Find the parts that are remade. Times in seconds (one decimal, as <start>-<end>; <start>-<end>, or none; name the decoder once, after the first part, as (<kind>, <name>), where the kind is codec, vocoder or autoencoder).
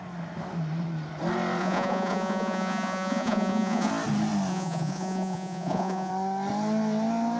1.6-3.9 (vocoder, Vocos); 4.5-6.1